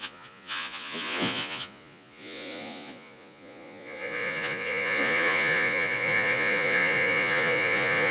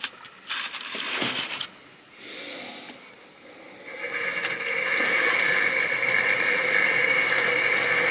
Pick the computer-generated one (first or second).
first